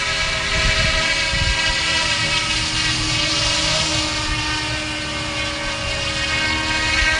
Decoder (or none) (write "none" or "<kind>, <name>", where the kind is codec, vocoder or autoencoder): none